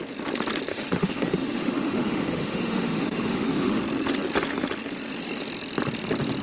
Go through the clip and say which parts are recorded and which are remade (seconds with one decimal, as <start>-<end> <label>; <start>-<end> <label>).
0.0-0.7 recorded; 0.7-3.8 remade; 3.8-6.4 recorded